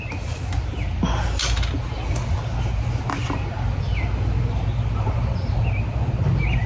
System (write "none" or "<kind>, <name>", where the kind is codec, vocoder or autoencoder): none